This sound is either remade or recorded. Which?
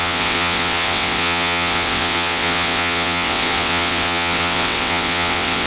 remade